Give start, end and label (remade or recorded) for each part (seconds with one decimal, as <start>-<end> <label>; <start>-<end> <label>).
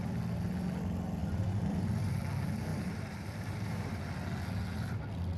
0.0-1.2 recorded; 1.2-2.2 remade; 2.2-2.7 recorded; 2.7-4.0 remade; 4.0-5.4 recorded